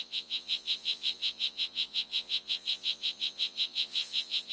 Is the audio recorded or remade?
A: remade